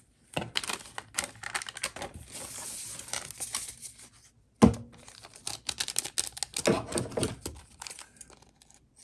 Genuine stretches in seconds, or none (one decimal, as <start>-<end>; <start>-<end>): 0.0-9.0